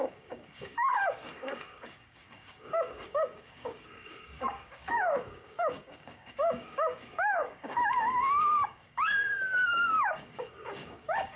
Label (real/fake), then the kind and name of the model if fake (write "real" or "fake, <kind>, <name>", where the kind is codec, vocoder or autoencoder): fake, codec, DAC